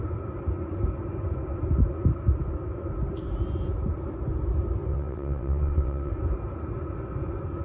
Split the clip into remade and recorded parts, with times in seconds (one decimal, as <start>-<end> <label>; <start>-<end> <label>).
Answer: 0.0-4.9 recorded; 4.9-6.1 remade; 6.1-7.6 recorded